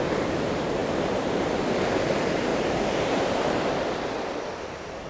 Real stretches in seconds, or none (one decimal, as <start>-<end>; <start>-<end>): 0.0-0.8; 1.6-2.5; 3.7-5.1